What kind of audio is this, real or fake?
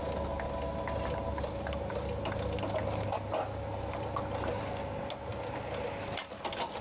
real